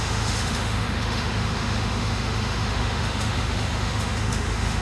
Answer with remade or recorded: remade